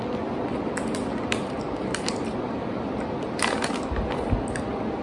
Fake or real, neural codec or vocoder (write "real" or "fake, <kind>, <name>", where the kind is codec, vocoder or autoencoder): real